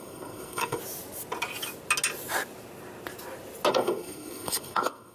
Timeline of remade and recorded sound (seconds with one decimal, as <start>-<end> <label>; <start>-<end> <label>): 0.0-0.8 remade; 0.8-3.7 recorded; 3.7-5.1 remade